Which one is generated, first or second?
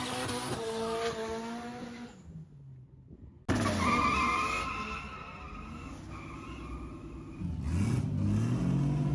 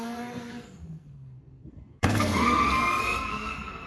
second